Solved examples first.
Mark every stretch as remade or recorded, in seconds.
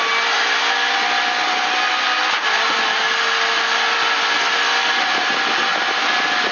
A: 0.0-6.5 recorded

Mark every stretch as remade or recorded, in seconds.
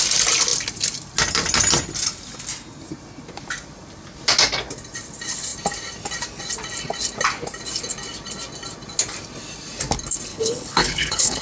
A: 0.0-10.3 recorded; 10.3-11.4 remade